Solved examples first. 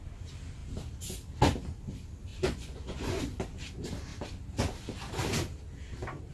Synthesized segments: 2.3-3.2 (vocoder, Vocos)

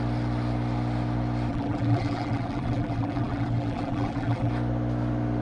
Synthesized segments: 1.5-4.5 (vocoder, BigVGAN v2)

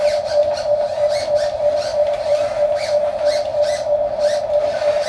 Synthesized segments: 1.9-2.5 (vocoder, BigVGAN v2)

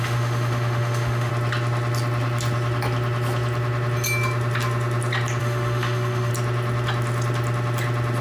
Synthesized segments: 0.0-1.3 (autoencoder, DAC-VAE); 5.4-6.3

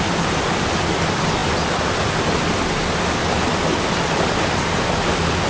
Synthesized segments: none